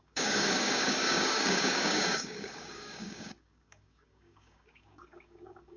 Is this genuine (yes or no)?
no